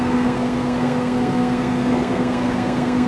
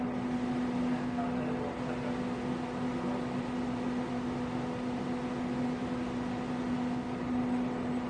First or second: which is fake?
first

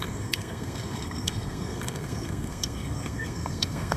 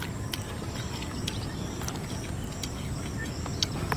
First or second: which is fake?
first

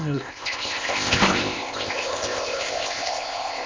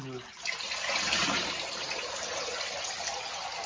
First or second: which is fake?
first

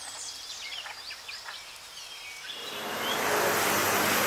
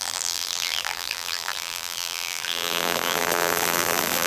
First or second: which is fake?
second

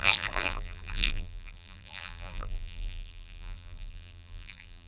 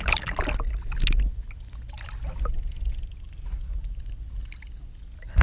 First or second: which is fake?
first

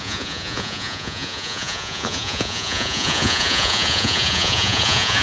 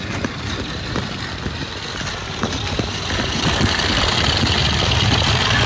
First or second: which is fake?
first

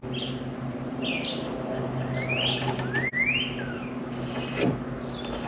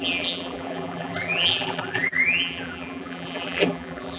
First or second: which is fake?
second